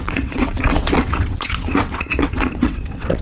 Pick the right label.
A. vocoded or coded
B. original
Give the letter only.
A